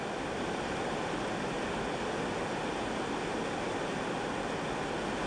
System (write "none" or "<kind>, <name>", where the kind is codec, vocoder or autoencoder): none